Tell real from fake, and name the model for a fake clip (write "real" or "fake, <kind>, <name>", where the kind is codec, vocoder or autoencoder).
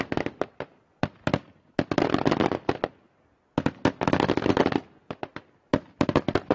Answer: real